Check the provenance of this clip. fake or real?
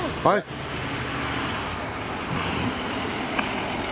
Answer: real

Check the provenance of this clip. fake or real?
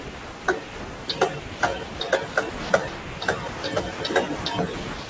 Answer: real